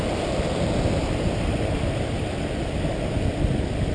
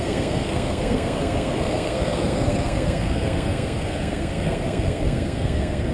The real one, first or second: first